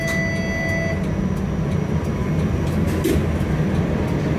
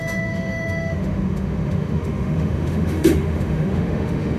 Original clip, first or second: first